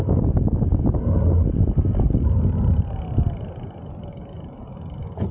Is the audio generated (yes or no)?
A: no